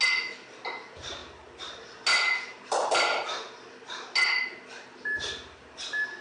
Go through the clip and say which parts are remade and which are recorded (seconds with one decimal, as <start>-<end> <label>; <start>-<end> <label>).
0.0-6.2 recorded

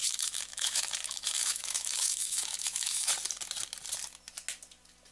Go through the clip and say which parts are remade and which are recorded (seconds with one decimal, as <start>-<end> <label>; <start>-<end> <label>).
0.0-3.1 remade; 3.1-5.1 recorded

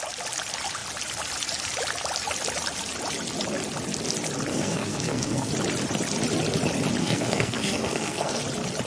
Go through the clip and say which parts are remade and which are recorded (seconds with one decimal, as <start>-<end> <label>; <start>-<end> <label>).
0.0-4.5 recorded; 4.5-5.5 remade; 5.5-7.0 recorded; 7.0-8.4 remade; 8.4-8.9 recorded

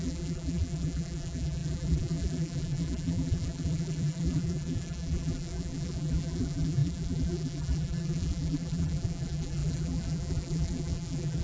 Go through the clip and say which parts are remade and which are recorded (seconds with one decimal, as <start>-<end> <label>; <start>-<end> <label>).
0.0-11.4 remade

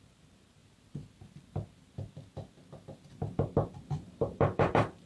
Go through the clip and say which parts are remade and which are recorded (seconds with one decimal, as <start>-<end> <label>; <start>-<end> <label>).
0.0-0.6 remade; 0.6-3.7 recorded; 3.7-5.1 remade

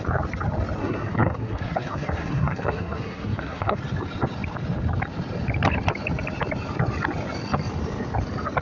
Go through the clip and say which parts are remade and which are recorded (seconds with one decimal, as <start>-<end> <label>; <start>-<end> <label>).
0.0-0.8 recorded; 0.8-3.8 remade; 3.8-8.6 recorded